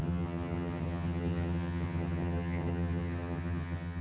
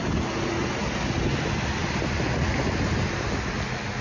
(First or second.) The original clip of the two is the second